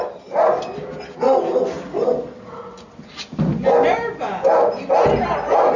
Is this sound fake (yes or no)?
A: no